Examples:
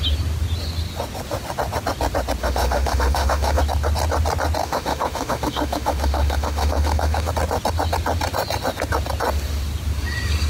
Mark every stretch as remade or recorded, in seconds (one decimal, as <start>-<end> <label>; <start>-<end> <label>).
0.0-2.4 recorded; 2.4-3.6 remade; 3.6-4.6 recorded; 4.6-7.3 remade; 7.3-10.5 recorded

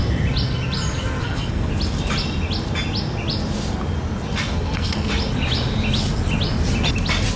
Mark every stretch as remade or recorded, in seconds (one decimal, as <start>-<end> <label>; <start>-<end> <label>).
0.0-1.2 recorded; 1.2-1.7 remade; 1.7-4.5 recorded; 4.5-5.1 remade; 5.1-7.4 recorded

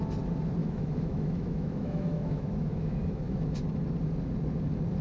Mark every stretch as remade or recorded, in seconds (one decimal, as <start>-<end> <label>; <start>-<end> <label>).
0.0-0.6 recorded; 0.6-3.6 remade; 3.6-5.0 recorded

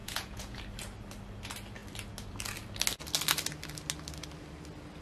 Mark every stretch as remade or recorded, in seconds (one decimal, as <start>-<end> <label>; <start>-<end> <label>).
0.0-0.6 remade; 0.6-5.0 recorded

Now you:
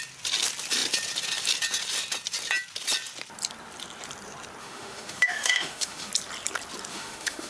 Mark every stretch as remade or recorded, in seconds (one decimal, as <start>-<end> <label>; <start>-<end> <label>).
0.0-4.6 recorded; 4.6-6.1 remade; 6.1-6.9 recorded; 6.9-7.5 remade